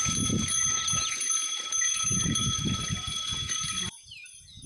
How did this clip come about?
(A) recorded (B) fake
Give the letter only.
B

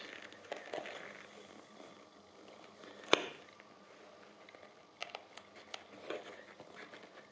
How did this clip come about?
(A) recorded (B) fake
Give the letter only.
A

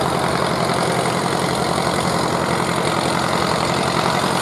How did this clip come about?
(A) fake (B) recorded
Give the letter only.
A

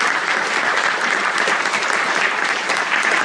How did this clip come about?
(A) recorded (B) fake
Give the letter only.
A